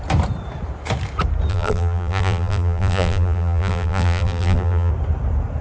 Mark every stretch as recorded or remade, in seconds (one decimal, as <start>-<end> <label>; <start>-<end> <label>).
0.0-1.5 recorded; 1.5-4.9 remade; 4.9-5.6 recorded